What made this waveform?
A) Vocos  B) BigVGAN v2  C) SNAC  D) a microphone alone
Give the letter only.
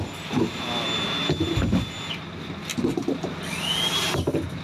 D